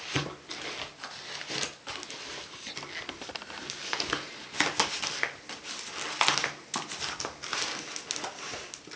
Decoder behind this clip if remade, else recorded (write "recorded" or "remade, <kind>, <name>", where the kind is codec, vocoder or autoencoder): recorded